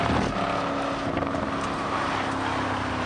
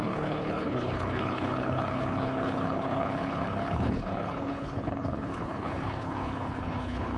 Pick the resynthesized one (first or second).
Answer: second